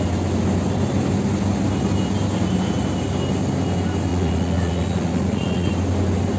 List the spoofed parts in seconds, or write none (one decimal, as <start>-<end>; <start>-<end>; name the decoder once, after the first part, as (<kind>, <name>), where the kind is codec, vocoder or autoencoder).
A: 4.1-5.7 (vocoder, Vocos)